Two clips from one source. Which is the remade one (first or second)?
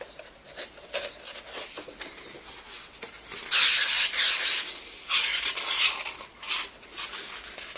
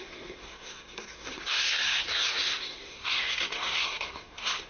second